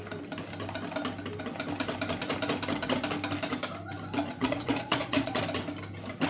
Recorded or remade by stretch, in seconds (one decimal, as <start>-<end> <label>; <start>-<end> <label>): 0.0-4.4 recorded; 4.4-5.4 remade; 5.4-6.3 recorded